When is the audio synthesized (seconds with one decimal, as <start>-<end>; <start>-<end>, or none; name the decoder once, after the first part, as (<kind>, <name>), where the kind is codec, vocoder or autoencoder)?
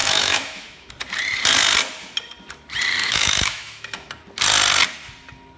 0.0-0.9 (autoencoder, DAC-VAE); 3.0-4.1